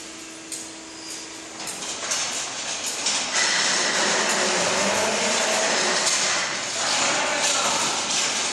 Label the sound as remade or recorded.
recorded